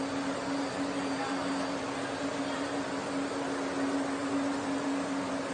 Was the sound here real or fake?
real